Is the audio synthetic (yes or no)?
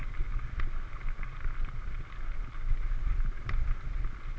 no